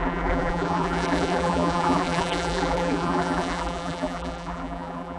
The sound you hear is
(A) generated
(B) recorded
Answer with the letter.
A